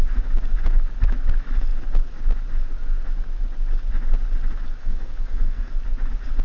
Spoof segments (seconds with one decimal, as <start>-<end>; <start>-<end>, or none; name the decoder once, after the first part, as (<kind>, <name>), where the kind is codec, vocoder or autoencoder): 4.8-5.7 (codec, SNAC)